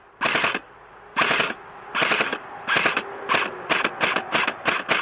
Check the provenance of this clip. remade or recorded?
recorded